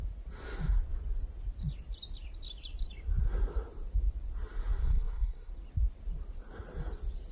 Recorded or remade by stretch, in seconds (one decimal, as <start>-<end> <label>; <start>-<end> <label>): 0.0-4.8 recorded; 4.8-5.5 remade; 5.5-7.3 recorded